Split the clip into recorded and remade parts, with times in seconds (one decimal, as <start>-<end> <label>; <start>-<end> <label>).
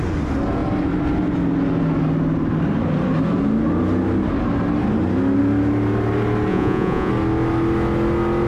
0.0-6.5 recorded; 6.5-7.1 remade; 7.1-8.5 recorded